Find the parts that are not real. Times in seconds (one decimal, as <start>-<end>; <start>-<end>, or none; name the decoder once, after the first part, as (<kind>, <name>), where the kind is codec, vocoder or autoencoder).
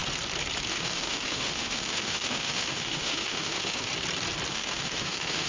0.7-3.9 (autoencoder, DAC-VAE); 4.5-5.5